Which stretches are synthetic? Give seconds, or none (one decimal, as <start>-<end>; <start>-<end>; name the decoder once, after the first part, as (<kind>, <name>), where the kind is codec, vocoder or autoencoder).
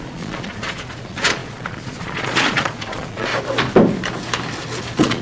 0.0-3.3 (vocoder, Vocos); 4.8-5.2